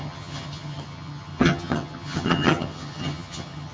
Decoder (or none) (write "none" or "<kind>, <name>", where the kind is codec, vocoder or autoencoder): vocoder, HiFi-GAN